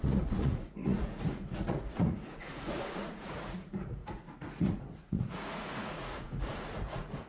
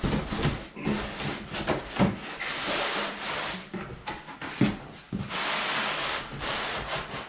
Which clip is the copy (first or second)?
first